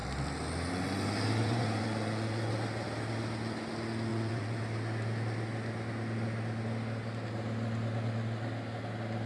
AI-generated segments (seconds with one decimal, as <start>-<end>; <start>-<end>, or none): 1.4-2.5; 4.1-4.6